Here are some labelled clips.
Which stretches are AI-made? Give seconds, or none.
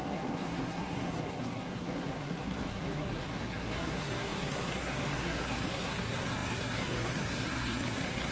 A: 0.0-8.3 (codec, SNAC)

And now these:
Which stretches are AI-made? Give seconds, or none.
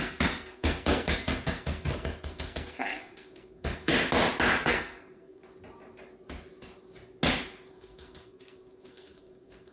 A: 0.0-3.9 (codec, SNAC); 4.6-5.4; 7.7-9.7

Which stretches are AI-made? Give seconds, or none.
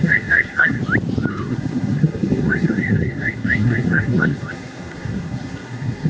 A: 0.0-0.8 (codec, SNAC); 1.3-6.1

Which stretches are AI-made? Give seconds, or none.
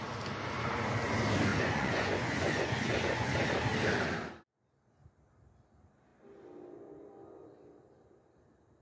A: 1.5-3.3 (vocoder, Vocos)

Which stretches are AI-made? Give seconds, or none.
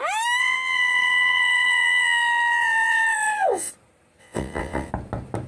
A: 0.4-3.7 (vocoder, WaveNeXt); 4.2-4.9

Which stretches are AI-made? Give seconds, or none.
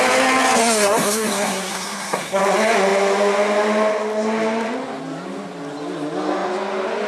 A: 0.6-2.4 (codec, SNAC)